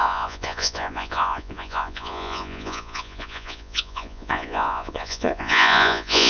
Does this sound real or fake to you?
fake